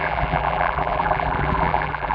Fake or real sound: fake